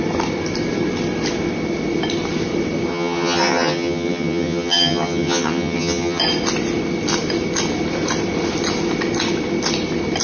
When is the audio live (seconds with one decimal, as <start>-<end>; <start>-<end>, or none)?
0.0-2.9; 6.2-10.2